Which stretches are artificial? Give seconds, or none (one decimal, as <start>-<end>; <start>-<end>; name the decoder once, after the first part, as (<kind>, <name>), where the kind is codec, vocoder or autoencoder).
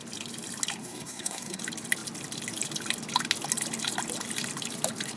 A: 0.8-1.6 (codec, SNAC)